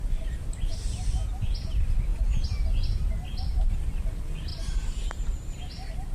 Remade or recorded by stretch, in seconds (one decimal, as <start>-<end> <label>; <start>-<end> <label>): 0.0-4.5 recorded; 4.5-6.1 remade